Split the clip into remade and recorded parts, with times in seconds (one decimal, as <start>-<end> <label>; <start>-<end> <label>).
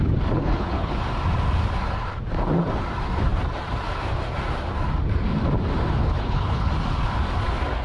0.0-0.4 recorded; 0.4-0.9 remade; 0.9-6.0 recorded; 6.0-6.7 remade; 6.7-7.8 recorded